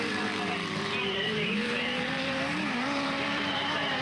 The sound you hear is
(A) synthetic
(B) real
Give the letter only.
A